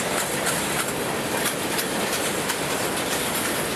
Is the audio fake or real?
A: real